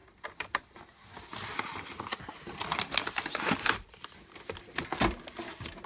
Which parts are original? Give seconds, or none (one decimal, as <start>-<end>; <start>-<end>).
0.6-5.9